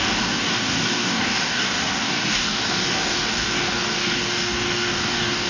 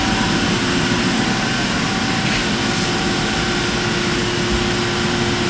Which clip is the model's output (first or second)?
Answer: first